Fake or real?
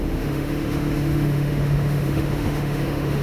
fake